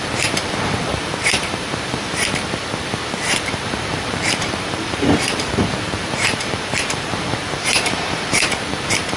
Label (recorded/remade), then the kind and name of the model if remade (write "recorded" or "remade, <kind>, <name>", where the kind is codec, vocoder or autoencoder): remade, vocoder, BigVGAN v2